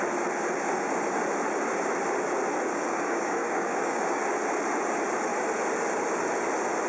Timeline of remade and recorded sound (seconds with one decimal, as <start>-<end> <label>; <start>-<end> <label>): 0.0-2.7 recorded; 2.7-4.2 remade; 4.2-6.9 recorded